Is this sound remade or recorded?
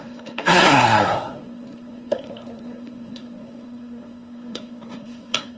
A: remade